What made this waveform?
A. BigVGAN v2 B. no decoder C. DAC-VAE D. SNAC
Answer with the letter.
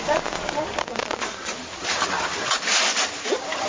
A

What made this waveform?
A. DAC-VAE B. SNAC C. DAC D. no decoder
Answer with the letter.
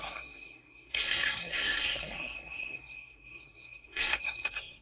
B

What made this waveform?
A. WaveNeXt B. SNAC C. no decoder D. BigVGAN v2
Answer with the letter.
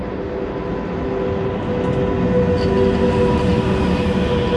C